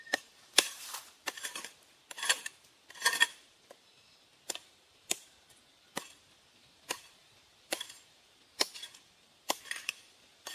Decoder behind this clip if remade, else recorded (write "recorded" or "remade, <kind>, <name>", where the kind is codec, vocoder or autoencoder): remade, vocoder, BigVGAN v2